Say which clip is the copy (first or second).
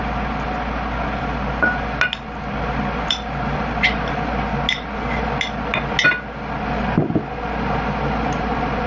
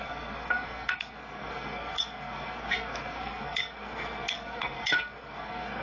second